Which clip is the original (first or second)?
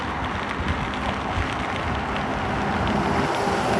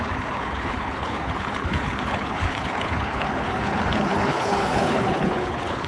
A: first